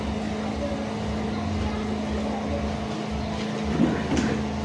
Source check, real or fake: real